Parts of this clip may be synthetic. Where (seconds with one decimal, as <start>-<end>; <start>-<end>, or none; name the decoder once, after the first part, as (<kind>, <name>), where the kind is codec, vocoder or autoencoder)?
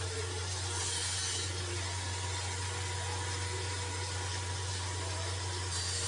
none